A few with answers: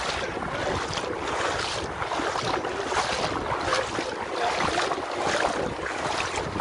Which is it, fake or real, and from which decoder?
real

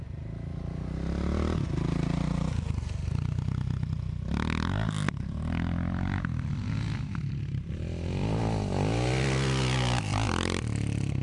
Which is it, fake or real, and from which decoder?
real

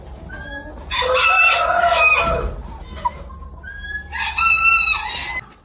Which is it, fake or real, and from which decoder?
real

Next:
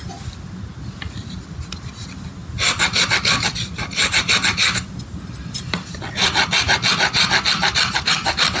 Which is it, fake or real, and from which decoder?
real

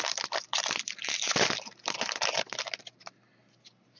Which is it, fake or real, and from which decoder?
real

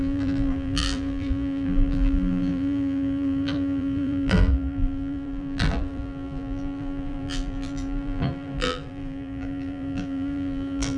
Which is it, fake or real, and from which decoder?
fake, vocoder, BigVGAN v2